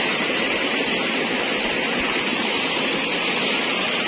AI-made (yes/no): no